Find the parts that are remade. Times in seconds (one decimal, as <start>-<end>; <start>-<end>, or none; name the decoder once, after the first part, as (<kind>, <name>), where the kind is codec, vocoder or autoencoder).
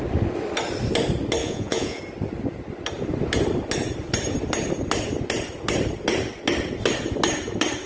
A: 1.4-2.0 (vocoder, Vocos)